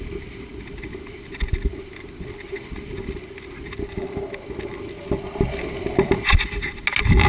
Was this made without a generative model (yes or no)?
yes